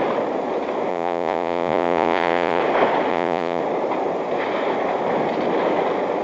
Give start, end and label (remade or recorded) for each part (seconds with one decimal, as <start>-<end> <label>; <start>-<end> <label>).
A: 0.0-0.9 recorded; 0.9-2.6 remade; 2.6-3.1 recorded; 3.1-3.6 remade; 3.6-6.2 recorded